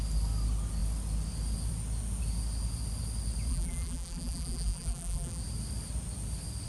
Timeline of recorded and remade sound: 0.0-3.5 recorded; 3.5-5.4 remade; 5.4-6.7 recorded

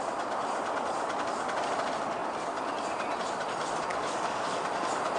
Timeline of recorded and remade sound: 0.0-3.9 recorded; 3.9-4.6 remade; 4.6-5.2 recorded

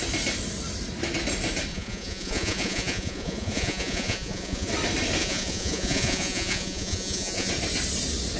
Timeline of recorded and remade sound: 0.0-1.7 recorded; 1.7-4.7 remade; 4.7-5.2 recorded; 5.2-7.5 remade; 7.5-8.4 recorded

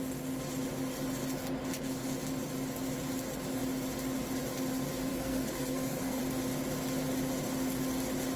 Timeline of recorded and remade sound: 0.0-5.1 recorded; 5.1-6.2 remade; 6.2-8.4 recorded